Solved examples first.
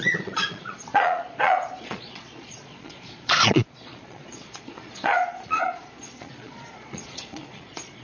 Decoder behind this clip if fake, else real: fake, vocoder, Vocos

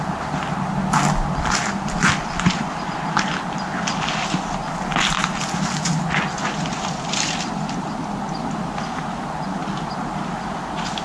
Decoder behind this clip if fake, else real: real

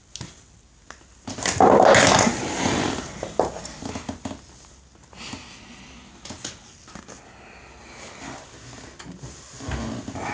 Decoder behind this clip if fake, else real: real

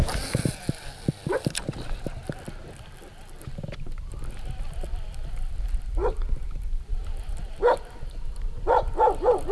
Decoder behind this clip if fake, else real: real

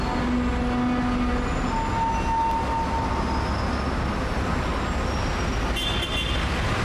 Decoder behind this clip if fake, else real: real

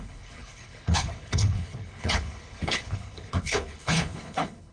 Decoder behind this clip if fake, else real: fake, codec, HILCodec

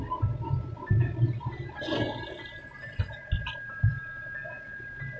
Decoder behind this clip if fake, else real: real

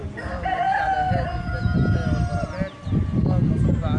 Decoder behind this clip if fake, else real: real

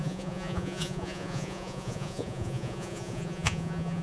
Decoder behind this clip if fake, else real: fake, vocoder, Vocos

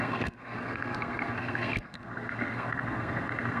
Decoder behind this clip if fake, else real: fake, codec, SNAC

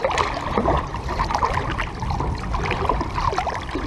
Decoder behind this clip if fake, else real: fake, vocoder, BigVGAN v2